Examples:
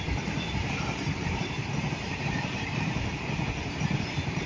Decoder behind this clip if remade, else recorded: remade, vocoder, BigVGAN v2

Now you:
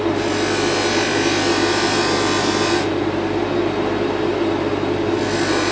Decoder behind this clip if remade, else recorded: recorded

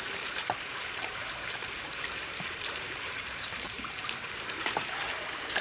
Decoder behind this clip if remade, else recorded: remade, vocoder, BigVGAN v2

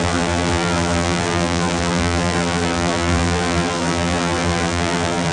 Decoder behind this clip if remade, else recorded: remade, vocoder, BigVGAN v2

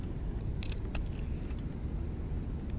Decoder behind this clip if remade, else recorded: recorded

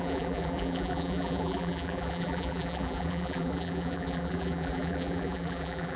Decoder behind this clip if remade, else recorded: remade, vocoder, BigVGAN v2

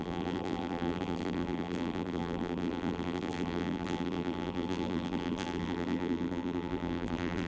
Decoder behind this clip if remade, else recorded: remade, vocoder, BigVGAN v2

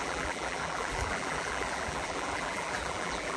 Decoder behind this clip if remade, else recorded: remade, vocoder, BigVGAN v2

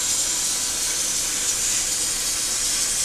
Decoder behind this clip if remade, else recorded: recorded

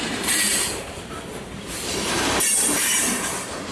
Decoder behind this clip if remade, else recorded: remade, vocoder, BigVGAN v2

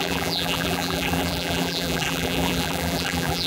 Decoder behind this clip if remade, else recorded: remade, vocoder, BigVGAN v2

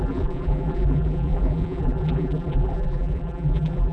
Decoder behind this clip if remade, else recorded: remade, vocoder, BigVGAN v2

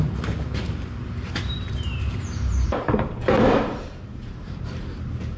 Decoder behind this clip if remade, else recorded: remade, vocoder, BigVGAN v2